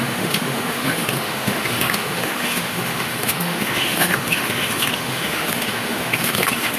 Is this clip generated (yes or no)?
yes